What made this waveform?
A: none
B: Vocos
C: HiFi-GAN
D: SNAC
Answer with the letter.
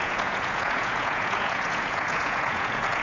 B